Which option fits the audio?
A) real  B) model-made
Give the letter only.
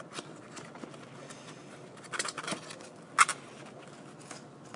A